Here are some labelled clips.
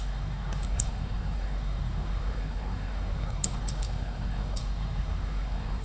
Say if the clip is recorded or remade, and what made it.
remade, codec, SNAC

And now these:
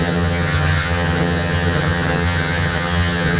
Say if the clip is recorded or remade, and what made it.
remade, vocoder, HiFi-GAN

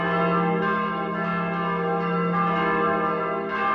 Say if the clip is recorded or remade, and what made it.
recorded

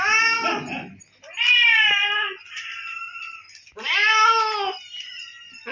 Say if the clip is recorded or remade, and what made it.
recorded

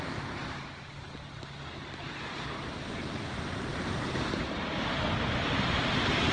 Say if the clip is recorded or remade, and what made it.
recorded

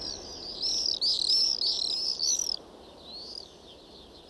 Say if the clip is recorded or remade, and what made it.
recorded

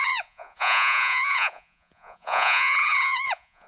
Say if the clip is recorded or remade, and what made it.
remade, vocoder, Vocos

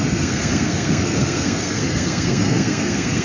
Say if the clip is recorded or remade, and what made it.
remade, codec, SNAC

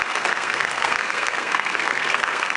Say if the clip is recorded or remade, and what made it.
remade, codec, SNAC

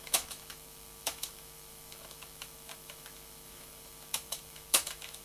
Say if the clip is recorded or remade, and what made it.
remade, autoencoder, DAC-VAE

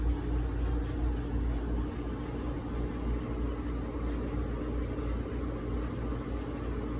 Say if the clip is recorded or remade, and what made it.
recorded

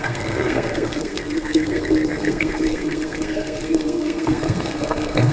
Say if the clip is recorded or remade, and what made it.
remade, codec, SNAC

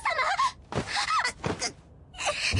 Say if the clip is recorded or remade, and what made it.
recorded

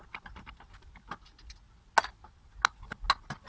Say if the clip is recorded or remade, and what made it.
recorded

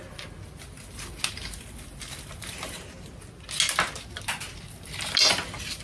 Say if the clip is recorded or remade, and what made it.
recorded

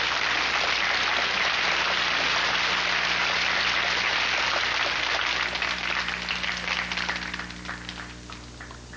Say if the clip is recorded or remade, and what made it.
recorded